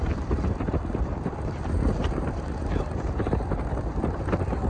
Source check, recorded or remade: remade